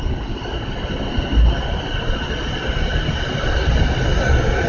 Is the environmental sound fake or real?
real